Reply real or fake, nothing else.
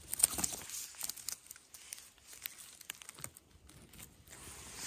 real